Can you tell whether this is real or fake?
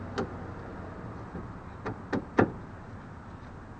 real